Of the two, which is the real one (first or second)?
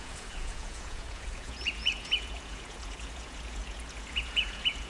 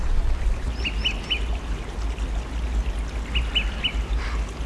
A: second